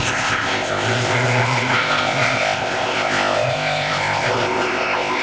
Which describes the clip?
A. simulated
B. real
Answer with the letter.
A